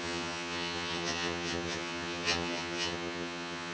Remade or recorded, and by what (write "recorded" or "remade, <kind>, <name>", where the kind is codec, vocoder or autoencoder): remade, vocoder, HiFi-GAN